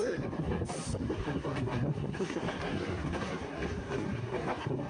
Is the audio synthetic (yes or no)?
yes